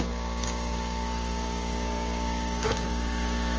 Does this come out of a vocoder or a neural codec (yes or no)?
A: yes